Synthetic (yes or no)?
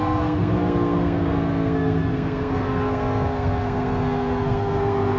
yes